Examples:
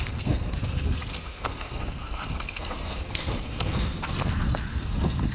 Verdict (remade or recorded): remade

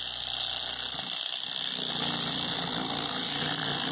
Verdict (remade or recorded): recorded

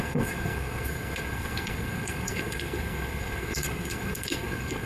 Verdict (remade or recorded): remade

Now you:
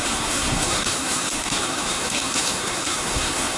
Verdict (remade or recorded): remade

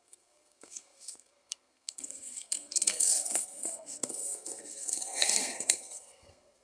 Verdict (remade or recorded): remade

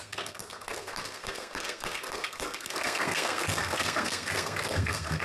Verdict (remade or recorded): remade